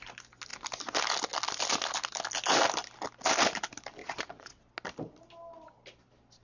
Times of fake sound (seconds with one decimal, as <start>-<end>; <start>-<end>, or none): 4.0-4.6